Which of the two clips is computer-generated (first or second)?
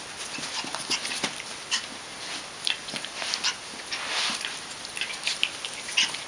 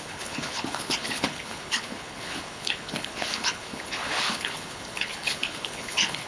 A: second